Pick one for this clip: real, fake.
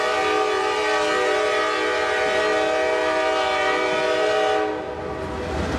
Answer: real